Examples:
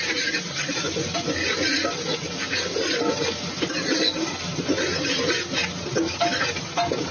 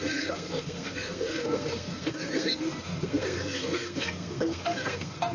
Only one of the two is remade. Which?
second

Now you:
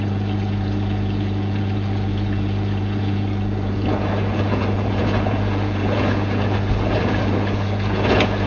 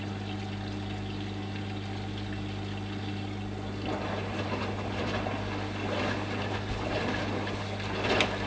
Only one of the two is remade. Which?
first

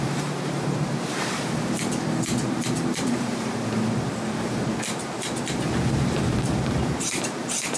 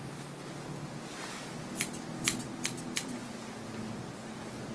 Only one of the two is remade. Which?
first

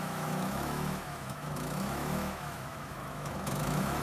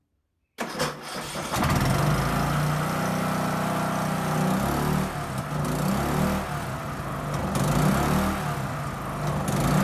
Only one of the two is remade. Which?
first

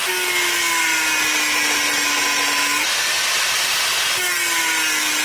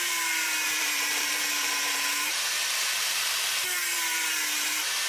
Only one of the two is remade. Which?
second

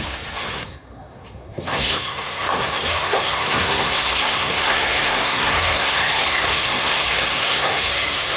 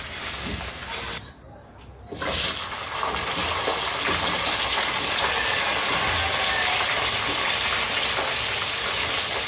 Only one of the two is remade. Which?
first